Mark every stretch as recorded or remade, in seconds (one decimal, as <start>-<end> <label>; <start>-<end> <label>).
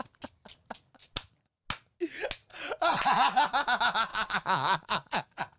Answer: 0.0-4.1 recorded; 4.1-5.1 remade; 5.1-5.6 recorded